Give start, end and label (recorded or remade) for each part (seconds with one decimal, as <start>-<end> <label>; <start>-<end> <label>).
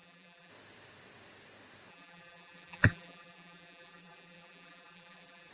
0.0-0.5 remade; 0.5-1.9 recorded; 1.9-5.5 remade